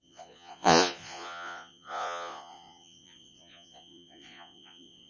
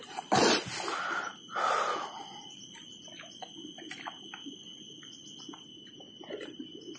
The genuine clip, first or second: second